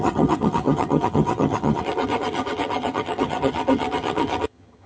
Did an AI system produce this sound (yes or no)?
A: yes